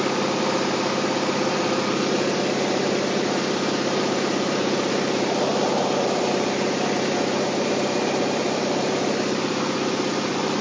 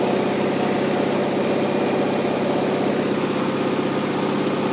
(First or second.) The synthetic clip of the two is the first